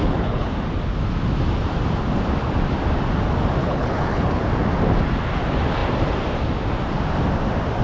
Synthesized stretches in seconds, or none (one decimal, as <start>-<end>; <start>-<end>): 0.0-0.5; 3.6-4.4